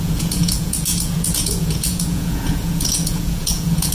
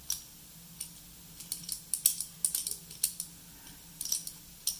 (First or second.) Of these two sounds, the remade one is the first